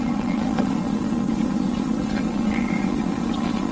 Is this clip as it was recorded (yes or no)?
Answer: no